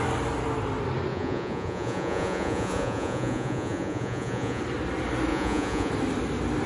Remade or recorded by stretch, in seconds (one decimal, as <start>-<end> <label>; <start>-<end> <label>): 0.0-1.1 recorded; 1.1-4.6 remade; 4.6-5.3 recorded; 5.3-5.9 remade; 5.9-6.7 recorded